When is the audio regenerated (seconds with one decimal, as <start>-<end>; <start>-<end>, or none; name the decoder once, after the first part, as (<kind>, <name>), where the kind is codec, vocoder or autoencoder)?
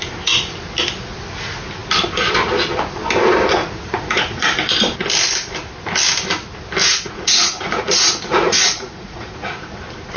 3.6-4.5 (vocoder, Vocos); 6.8-9.6